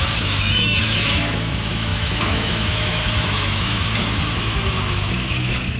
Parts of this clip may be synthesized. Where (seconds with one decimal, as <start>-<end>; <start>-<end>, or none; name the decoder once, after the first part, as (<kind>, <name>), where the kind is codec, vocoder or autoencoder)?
0.0-5.8 (autoencoder, DAC-VAE)